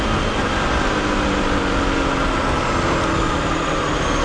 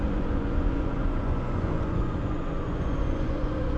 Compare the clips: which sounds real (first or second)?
first